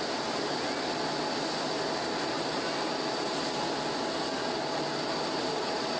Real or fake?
real